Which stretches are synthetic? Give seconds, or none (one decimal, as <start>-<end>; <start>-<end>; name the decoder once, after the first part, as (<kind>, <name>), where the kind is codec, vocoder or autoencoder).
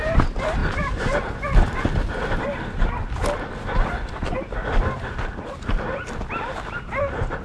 none